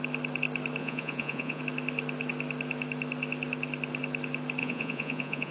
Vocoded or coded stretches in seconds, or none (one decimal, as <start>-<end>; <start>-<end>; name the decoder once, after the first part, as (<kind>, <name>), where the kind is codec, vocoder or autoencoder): 0.8-1.6 (vocoder, Vocos); 4.6-5.5